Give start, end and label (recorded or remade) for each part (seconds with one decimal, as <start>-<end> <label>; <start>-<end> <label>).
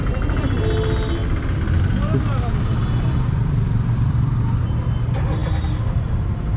0.0-6.6 recorded